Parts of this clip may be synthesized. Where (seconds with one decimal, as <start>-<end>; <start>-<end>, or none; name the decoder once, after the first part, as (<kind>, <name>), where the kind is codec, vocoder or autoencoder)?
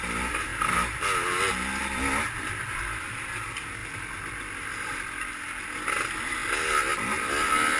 none